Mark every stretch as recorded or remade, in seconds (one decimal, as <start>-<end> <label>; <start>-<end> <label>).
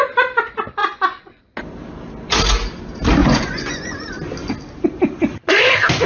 0.0-0.8 recorded; 0.8-1.4 remade; 1.4-3.2 recorded; 3.2-4.2 remade; 4.2-6.1 recorded